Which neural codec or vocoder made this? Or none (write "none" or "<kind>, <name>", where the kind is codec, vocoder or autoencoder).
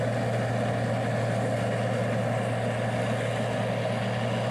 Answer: none